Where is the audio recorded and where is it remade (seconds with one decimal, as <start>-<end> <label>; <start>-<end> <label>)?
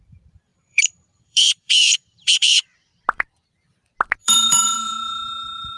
0.0-2.9 remade; 2.9-4.2 recorded; 4.2-5.8 remade